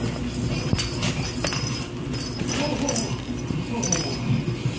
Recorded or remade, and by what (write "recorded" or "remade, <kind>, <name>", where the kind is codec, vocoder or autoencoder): recorded